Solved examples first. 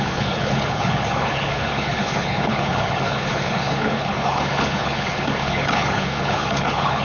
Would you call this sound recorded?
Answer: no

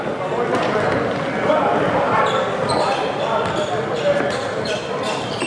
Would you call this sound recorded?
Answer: yes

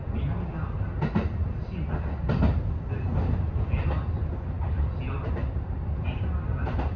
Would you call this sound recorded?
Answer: yes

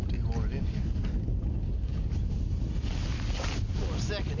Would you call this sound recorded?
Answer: yes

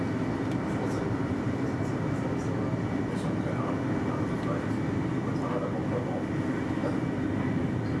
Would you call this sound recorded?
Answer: yes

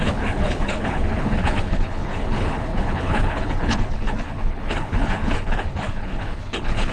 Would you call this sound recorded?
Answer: no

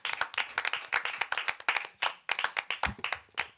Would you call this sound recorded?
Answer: yes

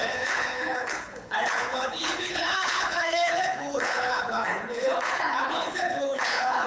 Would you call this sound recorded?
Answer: no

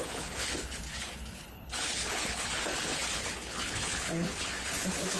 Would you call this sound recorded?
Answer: no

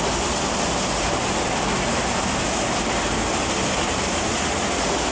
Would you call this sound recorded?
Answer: yes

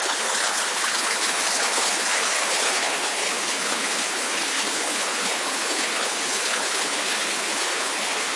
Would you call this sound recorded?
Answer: no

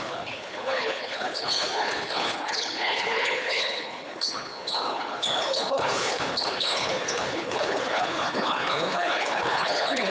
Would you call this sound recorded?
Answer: no